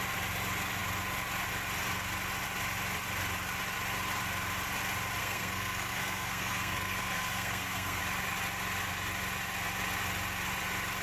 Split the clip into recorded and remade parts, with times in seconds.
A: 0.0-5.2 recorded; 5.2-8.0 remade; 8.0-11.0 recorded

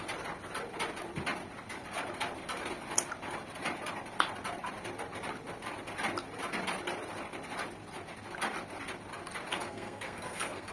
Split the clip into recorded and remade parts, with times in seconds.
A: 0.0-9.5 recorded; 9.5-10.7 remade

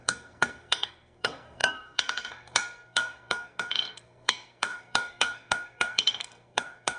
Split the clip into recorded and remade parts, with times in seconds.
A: 0.0-7.0 remade